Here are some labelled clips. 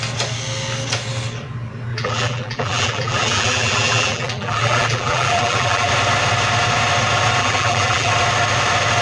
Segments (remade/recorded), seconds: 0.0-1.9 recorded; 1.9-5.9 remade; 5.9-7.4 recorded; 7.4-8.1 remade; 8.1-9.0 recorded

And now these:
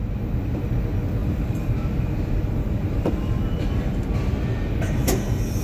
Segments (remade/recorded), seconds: 0.0-1.2 recorded; 1.2-4.1 remade; 4.1-5.6 recorded

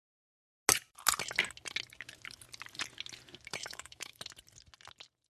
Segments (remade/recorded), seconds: 0.0-3.6 recorded; 3.6-4.2 remade; 4.2-5.3 recorded

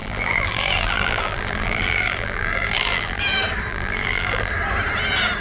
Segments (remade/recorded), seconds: 0.0-3.2 remade; 3.2-3.7 recorded; 3.7-4.5 remade; 4.5-5.4 recorded

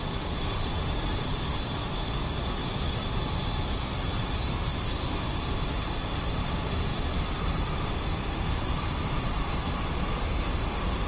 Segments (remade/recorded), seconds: 0.0-1.3 remade; 1.3-2.5 recorded; 2.5-3.0 remade; 3.0-4.0 recorded; 4.0-4.7 remade; 4.7-5.3 recorded; 5.3-6.9 remade; 6.9-10.2 recorded; 10.2-11.1 remade

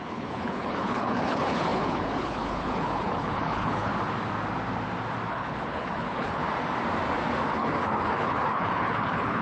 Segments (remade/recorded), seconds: 0.0-3.9 remade; 3.9-5.3 recorded; 5.3-6.4 remade; 6.4-7.5 recorded; 7.5-9.4 remade

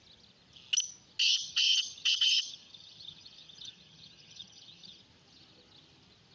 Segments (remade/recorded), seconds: 0.0-1.2 recorded; 1.2-5.0 remade; 5.0-6.3 recorded